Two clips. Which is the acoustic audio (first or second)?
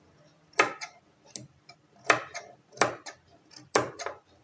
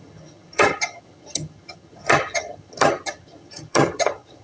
first